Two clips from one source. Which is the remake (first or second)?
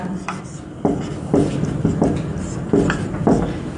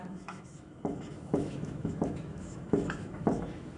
second